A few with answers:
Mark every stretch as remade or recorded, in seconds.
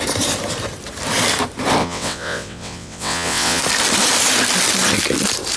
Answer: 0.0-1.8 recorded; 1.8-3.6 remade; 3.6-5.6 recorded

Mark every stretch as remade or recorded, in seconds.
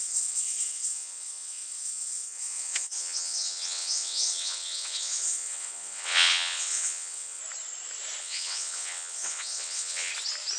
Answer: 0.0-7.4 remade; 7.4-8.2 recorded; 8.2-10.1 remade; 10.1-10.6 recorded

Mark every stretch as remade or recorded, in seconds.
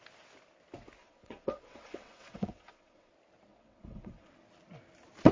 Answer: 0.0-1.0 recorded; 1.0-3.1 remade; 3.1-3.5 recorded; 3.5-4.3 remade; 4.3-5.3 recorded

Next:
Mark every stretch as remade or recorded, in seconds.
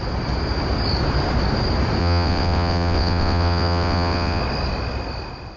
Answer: 0.0-2.0 recorded; 2.0-4.4 remade; 4.4-5.6 recorded